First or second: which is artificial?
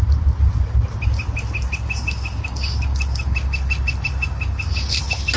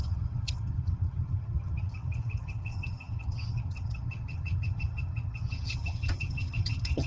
second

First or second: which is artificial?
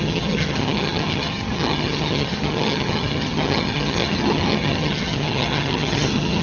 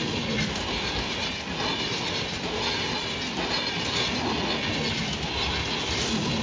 first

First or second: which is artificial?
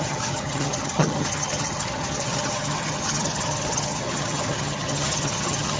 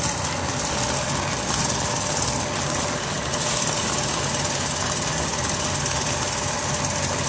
first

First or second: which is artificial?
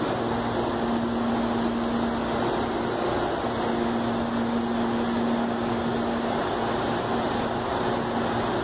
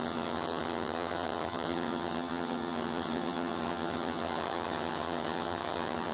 second